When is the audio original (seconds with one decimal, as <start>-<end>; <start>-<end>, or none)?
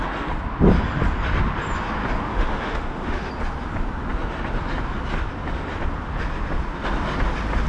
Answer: 0.0-2.3; 3.3-7.7